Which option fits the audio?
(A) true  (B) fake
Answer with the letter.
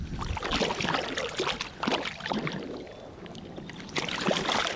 A